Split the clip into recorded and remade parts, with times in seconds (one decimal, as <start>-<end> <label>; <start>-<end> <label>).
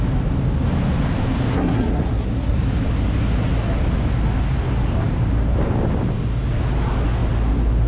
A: 0.0-1.5 recorded; 1.5-2.6 remade; 2.6-7.9 recorded